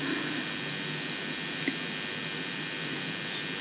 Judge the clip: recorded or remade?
recorded